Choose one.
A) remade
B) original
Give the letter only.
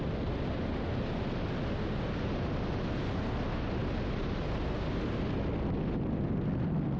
B